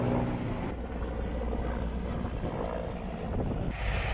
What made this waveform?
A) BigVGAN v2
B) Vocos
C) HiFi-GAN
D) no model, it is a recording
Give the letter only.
D